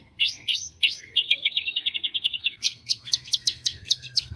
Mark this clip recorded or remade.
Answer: remade